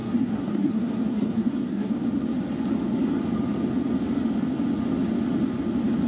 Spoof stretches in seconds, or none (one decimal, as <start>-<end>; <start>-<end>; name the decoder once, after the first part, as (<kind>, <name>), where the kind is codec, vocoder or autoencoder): 0.0-1.9 (codec, SNAC)

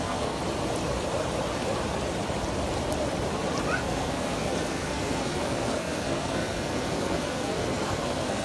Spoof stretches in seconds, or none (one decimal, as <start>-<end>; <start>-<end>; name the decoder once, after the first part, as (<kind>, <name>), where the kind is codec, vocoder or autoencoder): 0.0-0.4 (codec, SNAC); 3.8-8.4